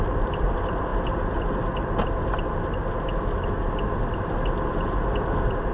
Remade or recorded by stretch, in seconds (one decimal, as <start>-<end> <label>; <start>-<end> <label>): 0.0-5.7 recorded